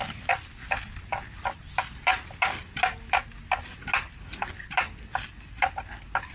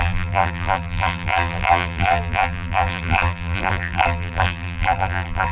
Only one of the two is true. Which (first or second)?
first